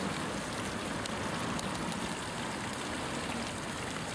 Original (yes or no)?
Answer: yes